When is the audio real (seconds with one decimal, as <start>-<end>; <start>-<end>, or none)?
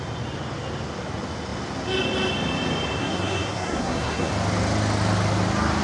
0.0-3.0; 4.3-5.8